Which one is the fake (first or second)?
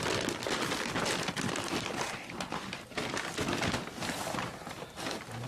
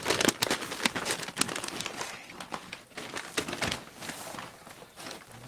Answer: first